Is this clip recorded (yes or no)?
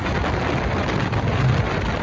yes